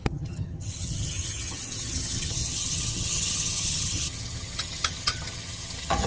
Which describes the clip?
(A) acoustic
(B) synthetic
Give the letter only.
B